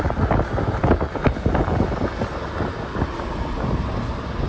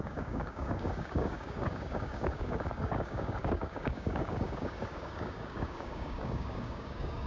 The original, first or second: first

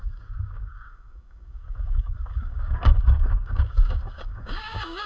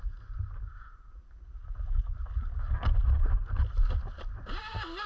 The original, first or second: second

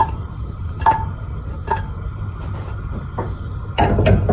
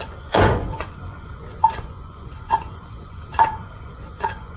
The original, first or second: first